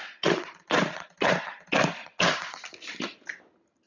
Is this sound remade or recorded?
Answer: recorded